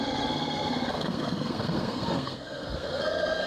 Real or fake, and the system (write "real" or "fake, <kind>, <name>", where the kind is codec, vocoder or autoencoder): fake, codec, SNAC